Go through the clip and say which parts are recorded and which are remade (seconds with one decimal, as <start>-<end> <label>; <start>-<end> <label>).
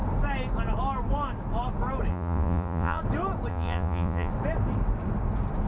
0.0-2.1 recorded; 2.1-3.0 remade; 3.0-3.5 recorded; 3.5-4.3 remade; 4.3-5.7 recorded